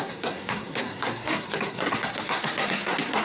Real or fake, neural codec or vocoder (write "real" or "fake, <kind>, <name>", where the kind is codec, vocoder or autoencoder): fake, codec, SNAC